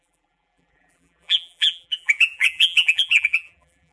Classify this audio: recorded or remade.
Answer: remade